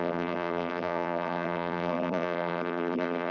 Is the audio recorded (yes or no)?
no